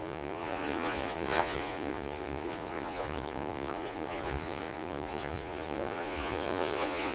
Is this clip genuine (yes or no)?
no